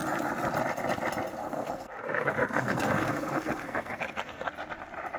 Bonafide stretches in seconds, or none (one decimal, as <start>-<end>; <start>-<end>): 0.0-1.4; 4.5-5.2